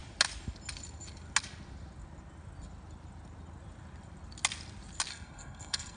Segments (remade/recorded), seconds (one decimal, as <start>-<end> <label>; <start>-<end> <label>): 0.0-5.1 recorded; 5.1-6.0 remade